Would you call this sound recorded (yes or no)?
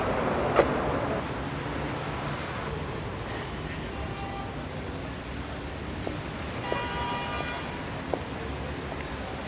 yes